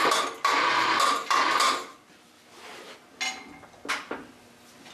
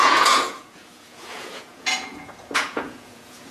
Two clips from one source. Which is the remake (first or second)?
second